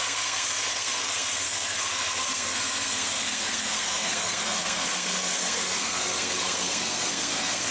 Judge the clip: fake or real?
fake